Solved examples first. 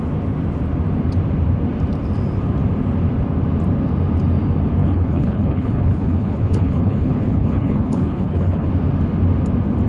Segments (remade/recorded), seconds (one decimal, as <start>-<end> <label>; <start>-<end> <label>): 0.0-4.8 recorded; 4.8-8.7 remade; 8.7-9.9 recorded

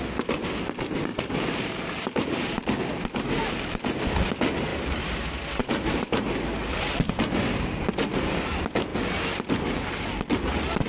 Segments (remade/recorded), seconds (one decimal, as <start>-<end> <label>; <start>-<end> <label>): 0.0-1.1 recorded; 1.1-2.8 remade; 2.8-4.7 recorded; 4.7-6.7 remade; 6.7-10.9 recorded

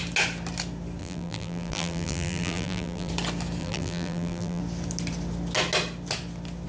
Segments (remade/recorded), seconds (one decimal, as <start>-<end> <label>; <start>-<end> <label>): 0.0-1.0 recorded; 1.0-3.1 remade; 3.1-3.6 recorded; 3.6-4.6 remade; 4.6-6.7 recorded

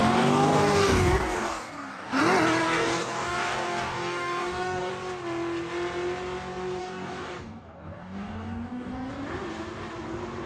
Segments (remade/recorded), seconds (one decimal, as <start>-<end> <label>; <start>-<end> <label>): 0.0-2.2 remade; 2.2-2.6 recorded; 2.6-4.9 remade; 4.9-6.8 recorded; 6.8-9.1 remade; 9.1-10.5 recorded

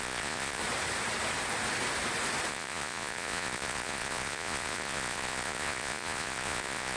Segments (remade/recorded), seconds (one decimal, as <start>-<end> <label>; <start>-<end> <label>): 0.0-0.6 remade; 0.6-2.5 recorded; 2.5-7.0 remade